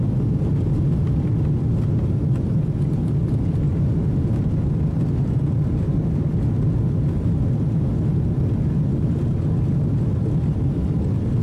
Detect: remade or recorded recorded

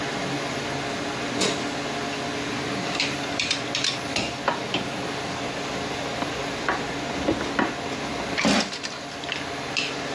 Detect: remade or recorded recorded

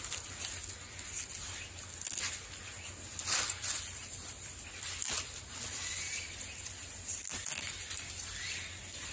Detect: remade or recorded recorded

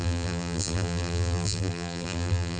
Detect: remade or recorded remade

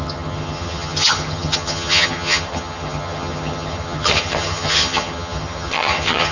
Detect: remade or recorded remade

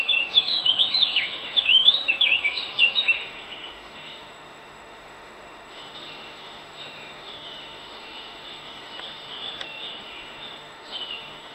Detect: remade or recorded remade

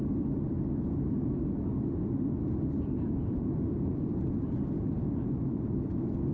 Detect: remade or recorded remade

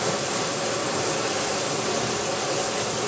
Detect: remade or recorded recorded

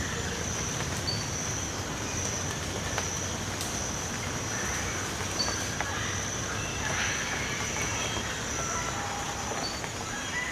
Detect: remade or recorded recorded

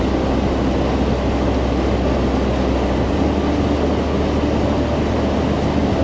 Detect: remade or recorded recorded